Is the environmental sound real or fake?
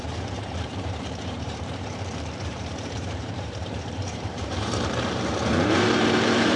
fake